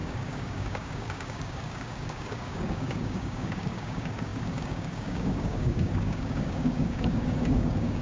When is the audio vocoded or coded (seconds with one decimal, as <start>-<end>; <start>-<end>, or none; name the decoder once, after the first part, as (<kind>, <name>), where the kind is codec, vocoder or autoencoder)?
0.0-8.0 (codec, DAC)